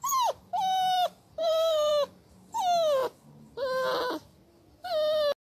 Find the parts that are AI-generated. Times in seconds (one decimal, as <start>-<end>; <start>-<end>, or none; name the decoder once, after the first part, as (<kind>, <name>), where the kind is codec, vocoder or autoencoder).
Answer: 1.4-1.9 (codec, SNAC)